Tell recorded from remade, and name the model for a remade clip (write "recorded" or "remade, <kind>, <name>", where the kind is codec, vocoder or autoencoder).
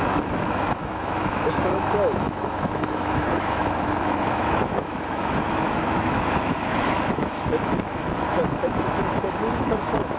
remade, autoencoder, DAC-VAE